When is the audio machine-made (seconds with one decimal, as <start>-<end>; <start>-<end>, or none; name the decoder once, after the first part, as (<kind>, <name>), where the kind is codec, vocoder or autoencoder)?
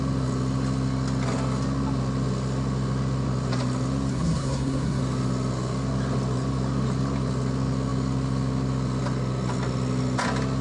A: 4.1-5.0 (codec, SNAC)